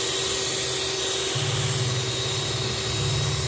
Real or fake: real